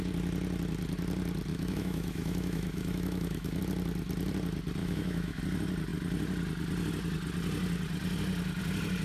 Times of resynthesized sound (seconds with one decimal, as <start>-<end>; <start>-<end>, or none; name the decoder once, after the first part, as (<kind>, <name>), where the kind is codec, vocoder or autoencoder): 1.5-3.6 (autoencoder, DAC-VAE); 4.8-5.4